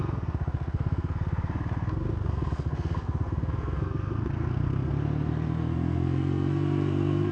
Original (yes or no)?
no